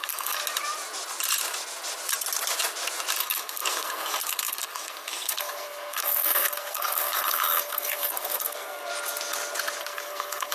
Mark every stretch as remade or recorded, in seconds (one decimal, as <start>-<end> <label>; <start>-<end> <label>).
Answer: 0.0-0.4 remade; 0.4-3.2 recorded; 3.2-8.9 remade; 8.9-9.8 recorded; 9.8-10.5 remade